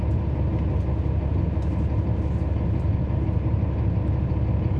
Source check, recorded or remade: recorded